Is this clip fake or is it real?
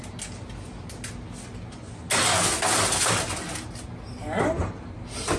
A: real